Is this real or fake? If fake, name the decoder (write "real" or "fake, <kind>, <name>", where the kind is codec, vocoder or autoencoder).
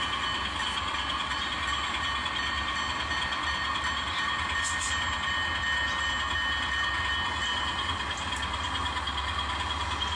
real